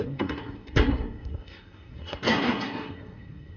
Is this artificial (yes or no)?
yes